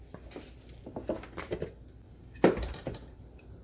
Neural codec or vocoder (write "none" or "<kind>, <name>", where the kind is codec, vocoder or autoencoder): none